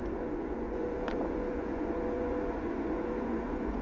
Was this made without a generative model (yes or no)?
no